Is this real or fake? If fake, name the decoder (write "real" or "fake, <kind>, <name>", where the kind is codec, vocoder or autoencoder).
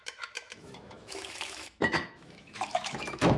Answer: fake, autoencoder, DAC-VAE